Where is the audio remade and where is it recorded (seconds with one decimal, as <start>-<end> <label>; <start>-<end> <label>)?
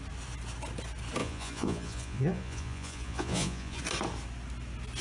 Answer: 0.0-1.2 recorded; 1.2-3.8 remade; 3.8-5.0 recorded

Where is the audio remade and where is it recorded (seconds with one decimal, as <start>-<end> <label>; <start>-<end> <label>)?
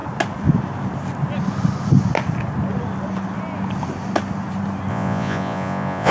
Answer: 0.0-4.9 recorded; 4.9-6.1 remade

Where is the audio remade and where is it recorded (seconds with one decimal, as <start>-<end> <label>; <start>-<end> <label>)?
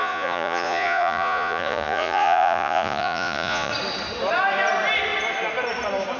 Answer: 0.0-3.7 remade; 3.7-6.2 recorded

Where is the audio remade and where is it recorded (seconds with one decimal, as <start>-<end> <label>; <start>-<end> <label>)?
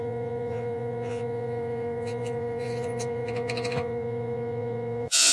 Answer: 0.0-5.3 remade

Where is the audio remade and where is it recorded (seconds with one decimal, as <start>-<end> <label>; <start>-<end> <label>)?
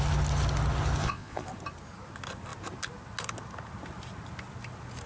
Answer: 0.0-1.0 recorded; 1.0-1.5 remade; 1.5-5.1 recorded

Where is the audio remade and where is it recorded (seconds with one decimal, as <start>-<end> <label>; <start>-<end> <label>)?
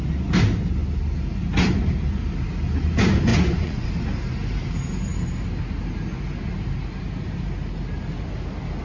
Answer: 0.0-3.3 recorded; 3.3-3.9 remade; 3.9-8.8 recorded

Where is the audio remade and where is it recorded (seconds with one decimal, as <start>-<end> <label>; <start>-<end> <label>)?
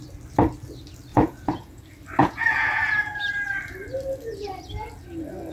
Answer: 0.0-1.1 recorded; 1.1-1.8 remade; 1.8-2.2 recorded; 2.2-3.2 remade; 3.2-5.5 recorded